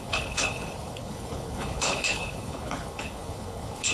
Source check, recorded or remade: remade